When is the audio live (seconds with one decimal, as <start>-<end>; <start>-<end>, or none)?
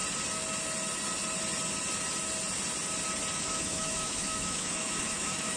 0.0-3.4